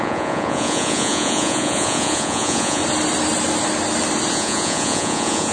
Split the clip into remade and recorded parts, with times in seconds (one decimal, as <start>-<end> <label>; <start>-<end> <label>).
0.0-2.8 remade; 2.8-4.3 recorded; 4.3-5.5 remade